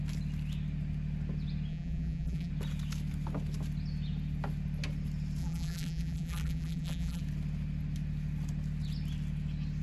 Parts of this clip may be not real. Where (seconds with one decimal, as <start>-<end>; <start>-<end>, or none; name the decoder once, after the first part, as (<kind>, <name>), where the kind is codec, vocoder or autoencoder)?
1.7-2.5 (vocoder, BigVGAN v2); 5.4-7.2